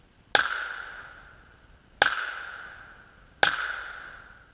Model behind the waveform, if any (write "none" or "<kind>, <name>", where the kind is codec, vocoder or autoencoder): none